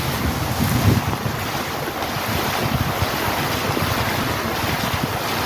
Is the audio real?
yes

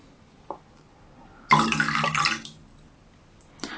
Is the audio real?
yes